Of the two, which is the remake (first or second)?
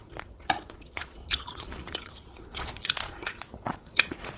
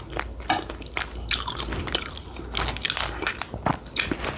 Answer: first